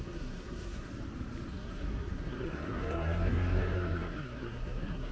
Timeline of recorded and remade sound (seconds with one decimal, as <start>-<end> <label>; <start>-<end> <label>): 0.0-0.9 remade; 0.9-1.5 recorded; 1.5-5.1 remade